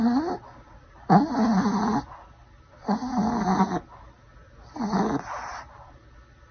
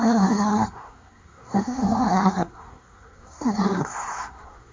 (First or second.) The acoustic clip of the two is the first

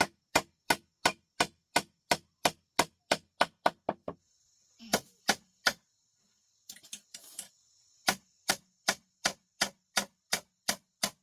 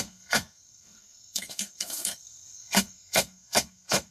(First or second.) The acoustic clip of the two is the first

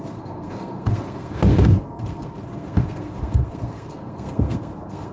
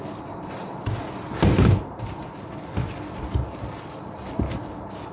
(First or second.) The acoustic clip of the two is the second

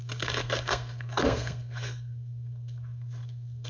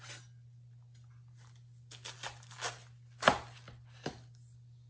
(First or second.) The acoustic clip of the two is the second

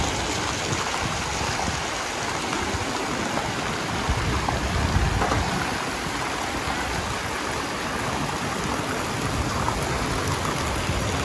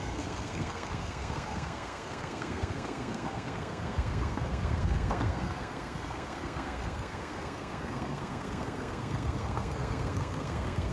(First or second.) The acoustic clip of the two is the first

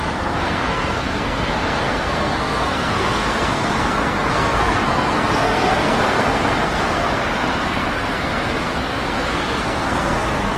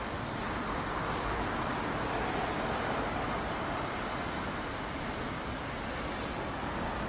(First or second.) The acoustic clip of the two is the second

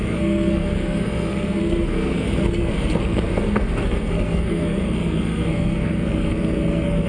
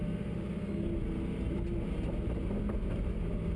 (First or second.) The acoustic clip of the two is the second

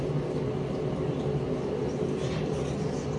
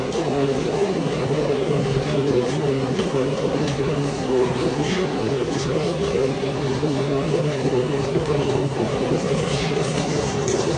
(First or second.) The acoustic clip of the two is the first